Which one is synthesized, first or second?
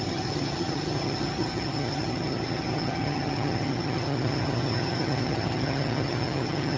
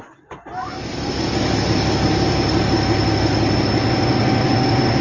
first